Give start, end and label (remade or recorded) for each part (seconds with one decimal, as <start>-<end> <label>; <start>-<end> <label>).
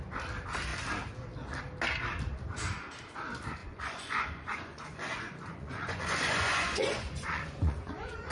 0.0-3.6 recorded; 3.6-8.3 remade